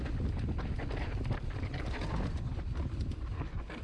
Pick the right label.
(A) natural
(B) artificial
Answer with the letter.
A